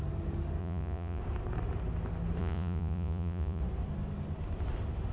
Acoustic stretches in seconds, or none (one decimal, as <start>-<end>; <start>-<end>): 0.0-0.6; 1.2-2.4; 3.6-5.1